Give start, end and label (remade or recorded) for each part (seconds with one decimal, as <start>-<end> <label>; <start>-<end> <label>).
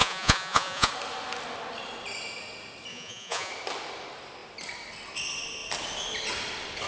0.0-0.9 remade; 0.9-2.9 recorded; 2.9-3.5 remade; 3.5-6.9 recorded